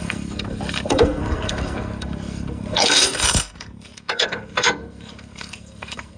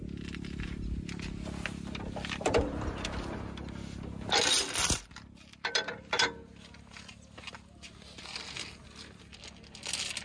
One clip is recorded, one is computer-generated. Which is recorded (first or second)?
second